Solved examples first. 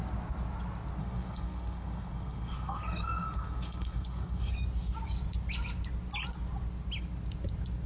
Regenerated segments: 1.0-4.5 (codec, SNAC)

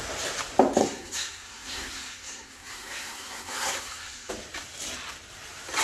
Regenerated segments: 0.8-4.3 (codec, SNAC)